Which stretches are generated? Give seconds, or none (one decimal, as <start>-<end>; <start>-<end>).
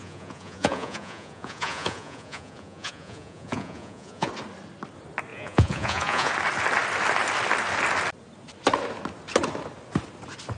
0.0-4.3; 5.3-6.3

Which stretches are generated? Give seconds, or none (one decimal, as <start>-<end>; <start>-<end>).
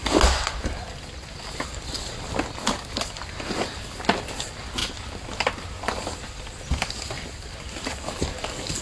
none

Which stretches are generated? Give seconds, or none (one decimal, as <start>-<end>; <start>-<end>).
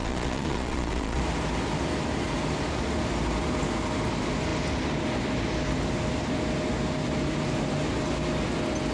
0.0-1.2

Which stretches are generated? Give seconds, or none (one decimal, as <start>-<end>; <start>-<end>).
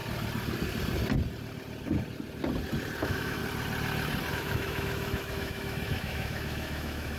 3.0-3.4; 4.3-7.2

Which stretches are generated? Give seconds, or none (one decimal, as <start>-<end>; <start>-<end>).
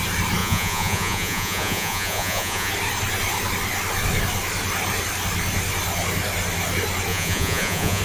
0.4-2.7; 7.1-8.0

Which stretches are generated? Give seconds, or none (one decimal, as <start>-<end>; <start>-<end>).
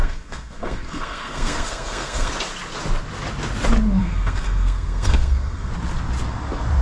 0.0-2.3; 4.0-5.7